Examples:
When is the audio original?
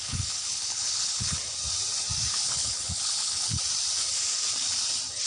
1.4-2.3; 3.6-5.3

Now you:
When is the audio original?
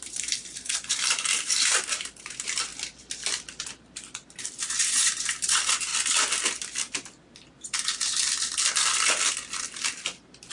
2.7-3.6; 5.9-10.5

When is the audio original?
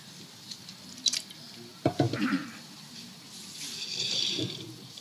0.0-1.7; 3.5-3.9